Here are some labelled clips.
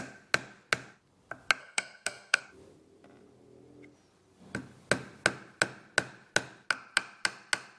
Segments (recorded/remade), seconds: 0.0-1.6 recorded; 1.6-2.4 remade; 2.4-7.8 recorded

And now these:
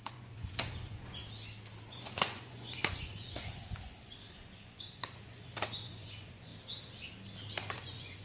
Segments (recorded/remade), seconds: 0.0-1.2 remade; 1.2-1.9 recorded; 1.9-6.5 remade; 6.5-7.7 recorded; 7.7-8.2 remade

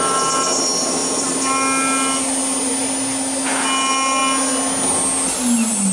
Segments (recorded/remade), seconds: 0.0-5.9 recorded

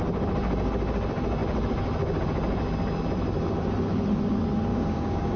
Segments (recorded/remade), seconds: 0.0-4.7 recorded; 4.7-5.4 remade

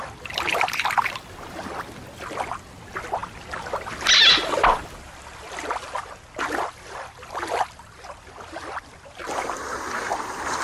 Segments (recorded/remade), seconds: 0.0-9.2 recorded; 9.2-10.2 remade; 10.2-10.6 recorded

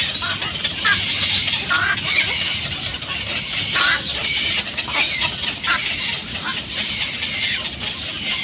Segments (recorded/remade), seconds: 0.0-8.4 recorded